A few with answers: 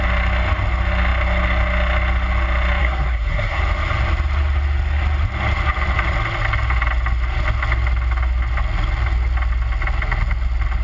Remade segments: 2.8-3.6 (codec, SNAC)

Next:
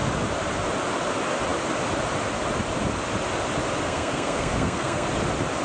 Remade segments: 3.8-5.1 (codec, SNAC)